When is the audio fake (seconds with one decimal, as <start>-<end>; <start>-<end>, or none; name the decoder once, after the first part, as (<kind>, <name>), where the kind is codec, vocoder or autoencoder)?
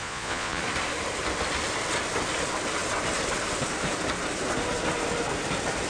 0.0-0.6 (vocoder, Vocos)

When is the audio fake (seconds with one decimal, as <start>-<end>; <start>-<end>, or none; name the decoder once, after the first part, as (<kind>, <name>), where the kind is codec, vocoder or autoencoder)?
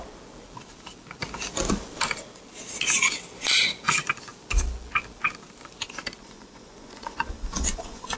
6.2-8.2 (vocoder, Vocos)